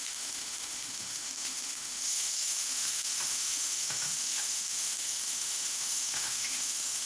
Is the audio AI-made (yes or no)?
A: yes